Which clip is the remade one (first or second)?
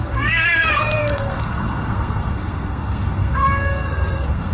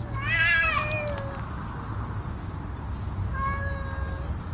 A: first